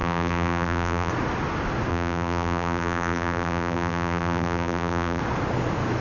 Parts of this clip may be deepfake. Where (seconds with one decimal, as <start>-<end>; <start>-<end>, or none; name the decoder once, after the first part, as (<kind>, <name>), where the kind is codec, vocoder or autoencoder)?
0.0-1.1 (vocoder, BigVGAN v2); 1.9-5.2